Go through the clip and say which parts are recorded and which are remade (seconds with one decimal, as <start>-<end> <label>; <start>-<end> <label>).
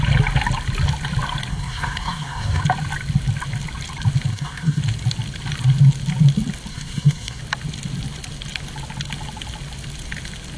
0.0-1.5 recorded; 1.5-2.6 remade; 2.6-4.3 recorded; 4.3-4.8 remade; 4.8-6.7 recorded; 6.7-7.4 remade; 7.4-10.6 recorded